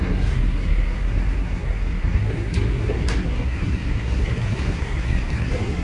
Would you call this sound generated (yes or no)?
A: yes